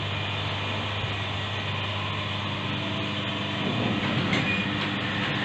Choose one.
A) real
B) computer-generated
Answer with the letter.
A